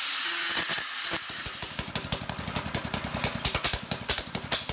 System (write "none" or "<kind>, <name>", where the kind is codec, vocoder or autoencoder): none